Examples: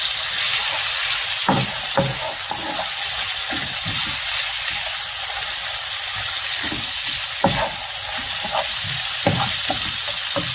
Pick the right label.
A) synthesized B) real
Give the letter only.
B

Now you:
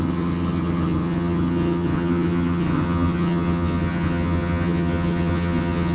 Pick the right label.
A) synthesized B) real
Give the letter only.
A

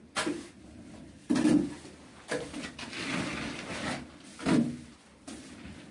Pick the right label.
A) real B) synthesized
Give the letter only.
A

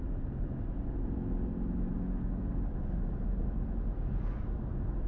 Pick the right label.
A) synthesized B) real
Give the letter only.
B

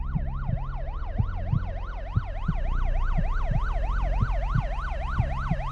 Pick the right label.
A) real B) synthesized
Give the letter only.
A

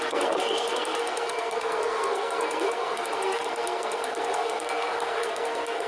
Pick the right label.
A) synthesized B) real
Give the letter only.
A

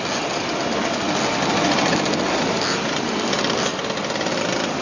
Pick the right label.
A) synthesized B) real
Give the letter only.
B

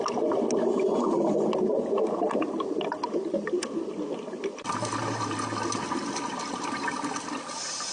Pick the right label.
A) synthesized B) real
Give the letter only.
B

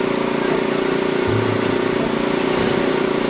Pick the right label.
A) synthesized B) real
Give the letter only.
B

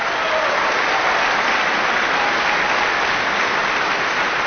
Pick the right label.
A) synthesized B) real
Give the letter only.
B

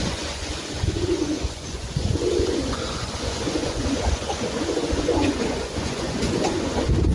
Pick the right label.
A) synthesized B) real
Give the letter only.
A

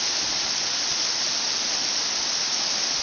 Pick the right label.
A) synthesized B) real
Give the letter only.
B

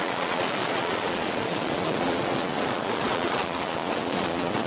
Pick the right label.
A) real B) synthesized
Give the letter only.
B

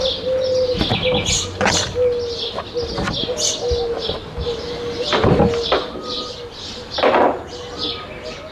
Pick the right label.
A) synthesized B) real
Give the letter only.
B